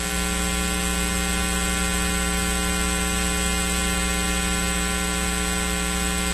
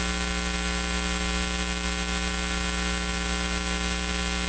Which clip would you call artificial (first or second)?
second